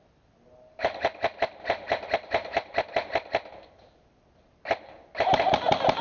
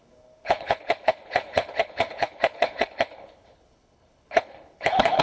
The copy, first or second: second